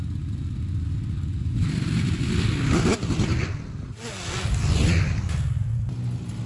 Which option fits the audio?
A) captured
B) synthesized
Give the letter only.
A